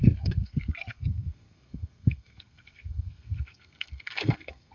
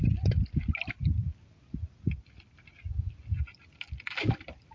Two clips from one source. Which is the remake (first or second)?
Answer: first